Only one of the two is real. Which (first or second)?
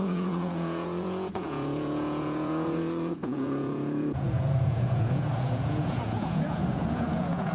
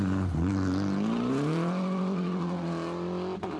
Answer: second